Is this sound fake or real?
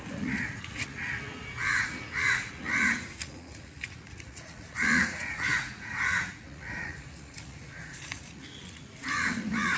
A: fake